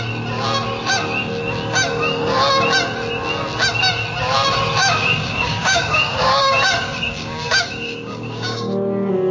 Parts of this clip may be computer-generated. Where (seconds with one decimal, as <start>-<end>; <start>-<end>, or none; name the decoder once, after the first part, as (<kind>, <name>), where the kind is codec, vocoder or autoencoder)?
4.8-9.3 (codec, DAC)